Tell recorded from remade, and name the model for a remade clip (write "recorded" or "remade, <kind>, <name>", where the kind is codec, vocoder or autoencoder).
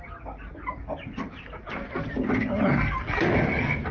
recorded